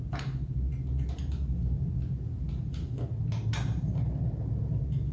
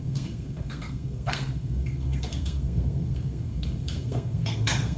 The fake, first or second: second